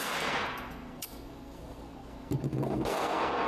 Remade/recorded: remade